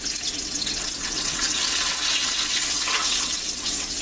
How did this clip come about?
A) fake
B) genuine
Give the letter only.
A